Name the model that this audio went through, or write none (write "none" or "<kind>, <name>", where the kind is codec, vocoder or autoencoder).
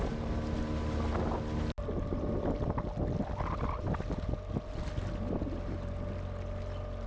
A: none